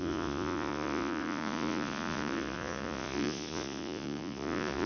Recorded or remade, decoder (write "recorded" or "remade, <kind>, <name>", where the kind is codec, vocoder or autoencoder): remade, vocoder, Vocos